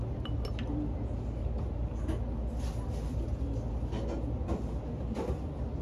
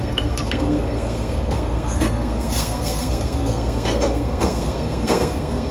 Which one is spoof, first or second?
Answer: second